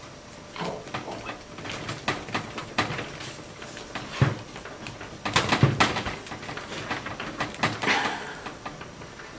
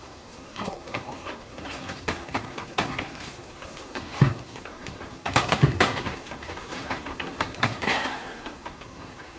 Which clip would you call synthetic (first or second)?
second